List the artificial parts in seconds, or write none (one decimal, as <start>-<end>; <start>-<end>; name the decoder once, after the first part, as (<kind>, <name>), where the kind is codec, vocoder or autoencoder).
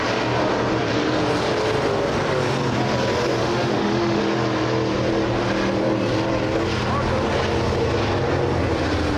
3.4-4.2 (autoencoder, DAC-VAE)